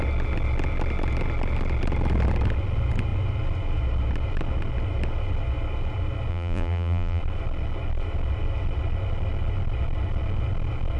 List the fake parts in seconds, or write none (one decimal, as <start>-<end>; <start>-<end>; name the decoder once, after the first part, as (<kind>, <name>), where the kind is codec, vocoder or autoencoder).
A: 6.3-7.2 (vocoder, BigVGAN v2)